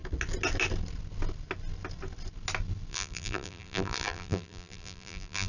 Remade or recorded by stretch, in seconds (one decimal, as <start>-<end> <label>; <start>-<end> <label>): 0.0-2.9 recorded; 2.9-5.5 remade